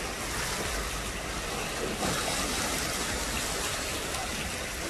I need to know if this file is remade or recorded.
recorded